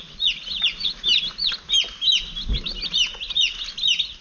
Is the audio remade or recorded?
recorded